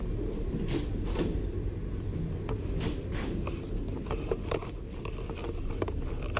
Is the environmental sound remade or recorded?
recorded